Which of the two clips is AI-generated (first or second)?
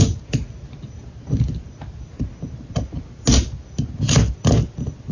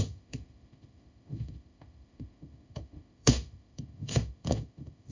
second